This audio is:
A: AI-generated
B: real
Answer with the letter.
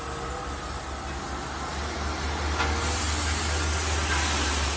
B